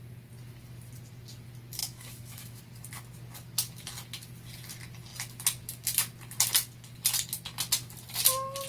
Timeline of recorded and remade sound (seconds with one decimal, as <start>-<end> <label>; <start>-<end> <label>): 0.0-1.8 recorded; 1.8-2.6 remade; 2.6-8.7 recorded